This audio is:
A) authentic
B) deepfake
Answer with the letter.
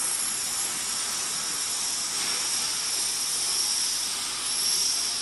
A